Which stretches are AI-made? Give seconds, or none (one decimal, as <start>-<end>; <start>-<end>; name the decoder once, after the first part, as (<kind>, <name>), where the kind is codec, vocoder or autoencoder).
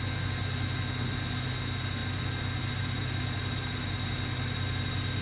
none